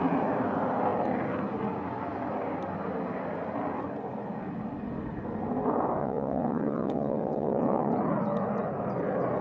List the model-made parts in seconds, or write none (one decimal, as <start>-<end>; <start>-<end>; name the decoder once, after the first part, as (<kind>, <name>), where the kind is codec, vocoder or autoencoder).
6.0-7.9 (vocoder, WaveNeXt)